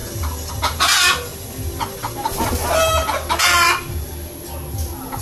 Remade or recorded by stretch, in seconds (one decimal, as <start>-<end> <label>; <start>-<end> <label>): 0.0-5.2 recorded